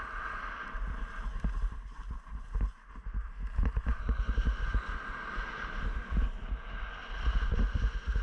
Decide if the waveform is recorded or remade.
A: recorded